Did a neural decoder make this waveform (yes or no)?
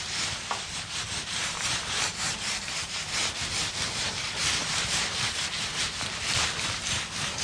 yes